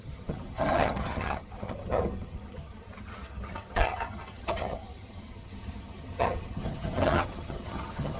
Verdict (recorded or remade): remade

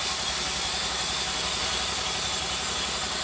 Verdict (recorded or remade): recorded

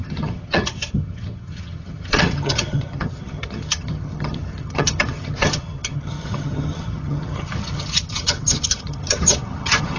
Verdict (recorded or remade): remade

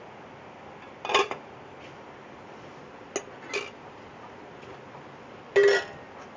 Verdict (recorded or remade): recorded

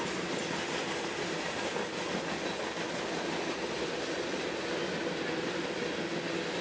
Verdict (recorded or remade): recorded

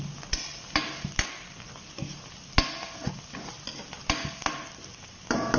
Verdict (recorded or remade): recorded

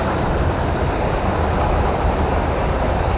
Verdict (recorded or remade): recorded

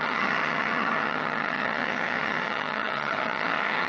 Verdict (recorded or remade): remade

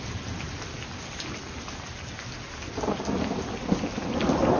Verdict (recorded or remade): recorded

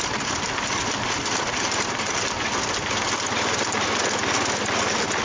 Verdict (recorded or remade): recorded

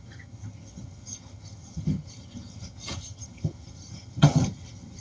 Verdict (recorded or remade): remade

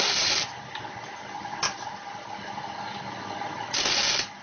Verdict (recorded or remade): recorded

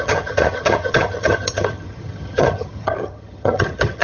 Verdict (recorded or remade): remade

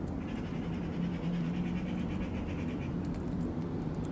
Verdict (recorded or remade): recorded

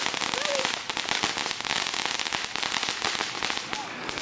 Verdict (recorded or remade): recorded